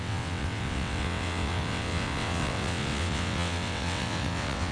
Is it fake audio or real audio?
fake